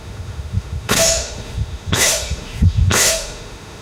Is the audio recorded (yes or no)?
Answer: no